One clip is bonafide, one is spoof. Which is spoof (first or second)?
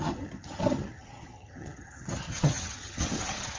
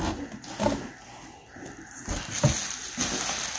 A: first